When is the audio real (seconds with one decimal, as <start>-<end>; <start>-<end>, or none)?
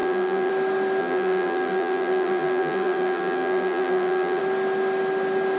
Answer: 0.5-1.0; 4.4-5.6